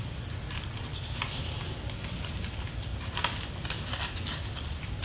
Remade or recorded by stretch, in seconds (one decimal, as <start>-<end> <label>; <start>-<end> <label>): 0.0-5.0 recorded